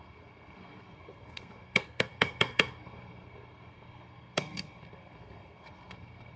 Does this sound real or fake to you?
fake